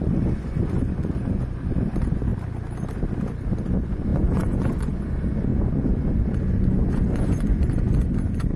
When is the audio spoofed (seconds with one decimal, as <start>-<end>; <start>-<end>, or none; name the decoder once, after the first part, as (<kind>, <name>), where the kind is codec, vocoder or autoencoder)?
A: 0.0-2.3 (vocoder, Vocos); 3.6-8.6